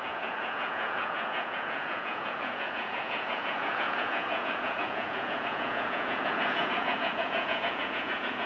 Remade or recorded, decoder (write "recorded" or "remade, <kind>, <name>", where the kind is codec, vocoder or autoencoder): remade, vocoder, Vocos